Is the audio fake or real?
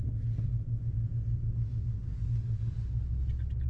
real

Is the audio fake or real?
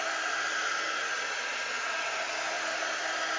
real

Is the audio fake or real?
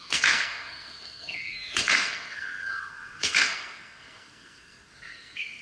fake